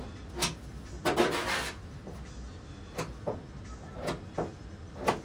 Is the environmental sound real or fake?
real